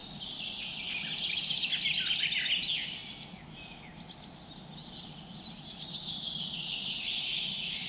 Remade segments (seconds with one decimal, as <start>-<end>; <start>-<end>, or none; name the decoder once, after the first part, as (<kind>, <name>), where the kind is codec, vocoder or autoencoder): none